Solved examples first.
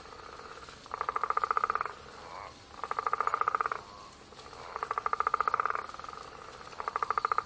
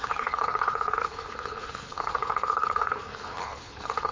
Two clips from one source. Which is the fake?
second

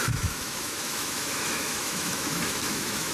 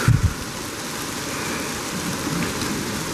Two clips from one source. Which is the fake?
first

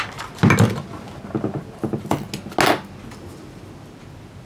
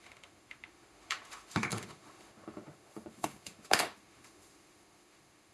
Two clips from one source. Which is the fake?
second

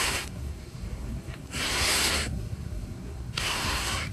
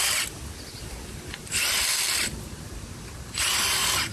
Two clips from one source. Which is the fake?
first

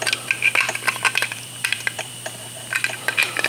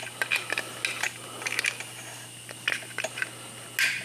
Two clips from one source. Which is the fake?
first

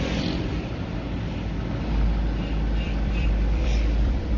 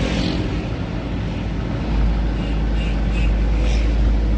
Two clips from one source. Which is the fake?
first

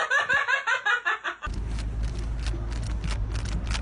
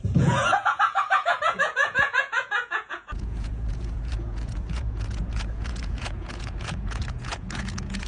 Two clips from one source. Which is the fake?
second